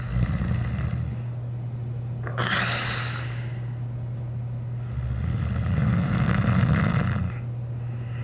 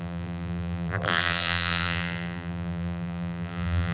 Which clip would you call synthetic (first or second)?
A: second